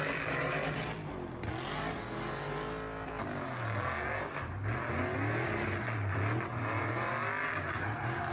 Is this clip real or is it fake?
real